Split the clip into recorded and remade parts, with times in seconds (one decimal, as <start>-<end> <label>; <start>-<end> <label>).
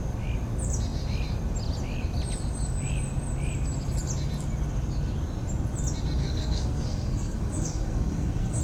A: 0.0-6.2 recorded; 6.2-8.6 remade